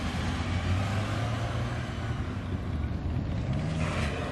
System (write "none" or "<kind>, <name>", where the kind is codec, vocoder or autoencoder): none